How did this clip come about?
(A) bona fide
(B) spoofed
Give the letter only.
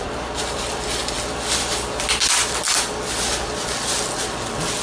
A